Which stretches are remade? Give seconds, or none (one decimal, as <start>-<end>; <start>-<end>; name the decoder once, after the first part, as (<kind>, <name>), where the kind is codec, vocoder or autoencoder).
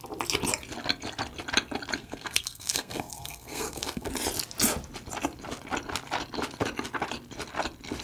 2.0-4.1 (codec, SNAC)